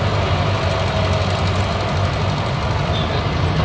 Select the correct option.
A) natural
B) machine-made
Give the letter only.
A